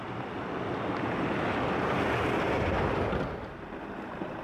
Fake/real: real